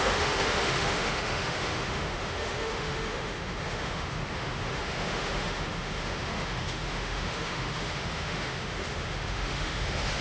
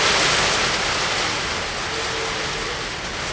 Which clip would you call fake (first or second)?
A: first